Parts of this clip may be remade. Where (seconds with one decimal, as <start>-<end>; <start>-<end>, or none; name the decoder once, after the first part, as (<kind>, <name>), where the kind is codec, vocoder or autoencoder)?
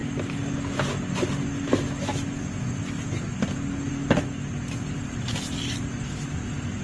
none